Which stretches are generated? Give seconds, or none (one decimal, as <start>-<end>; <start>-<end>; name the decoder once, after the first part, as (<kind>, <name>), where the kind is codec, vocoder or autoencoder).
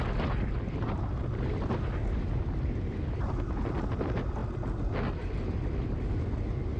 none